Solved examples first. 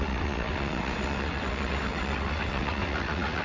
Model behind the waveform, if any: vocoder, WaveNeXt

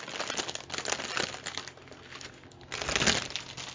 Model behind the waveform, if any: none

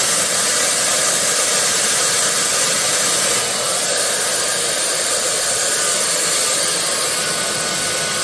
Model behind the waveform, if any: none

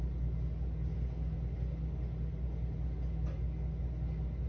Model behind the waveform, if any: none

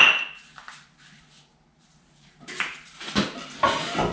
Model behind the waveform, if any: none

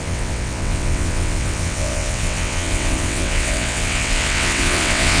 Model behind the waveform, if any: vocoder, WaveNeXt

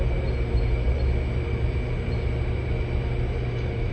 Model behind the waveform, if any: none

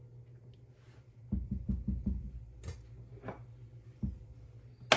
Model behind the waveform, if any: none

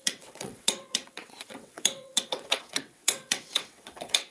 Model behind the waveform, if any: vocoder, WaveNeXt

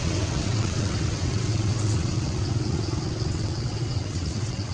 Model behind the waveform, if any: vocoder, WaveNeXt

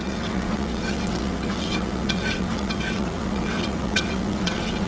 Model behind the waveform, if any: vocoder, WaveNeXt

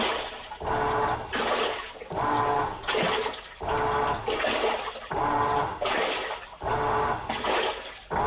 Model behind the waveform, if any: none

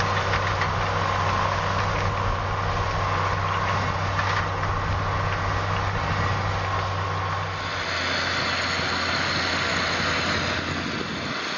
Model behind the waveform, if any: none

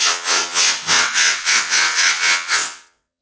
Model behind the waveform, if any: vocoder, WaveNeXt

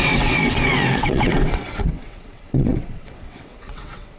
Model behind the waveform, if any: vocoder, WaveNeXt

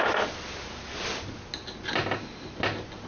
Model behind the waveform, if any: none